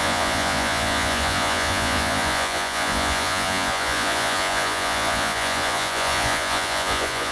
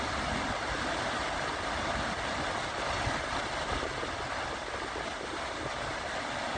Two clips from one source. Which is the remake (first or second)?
first